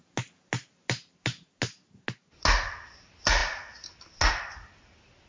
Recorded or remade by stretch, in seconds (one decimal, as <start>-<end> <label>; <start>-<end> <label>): 0.0-5.3 recorded